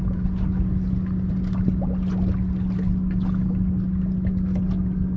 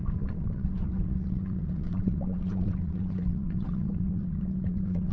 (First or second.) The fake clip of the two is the second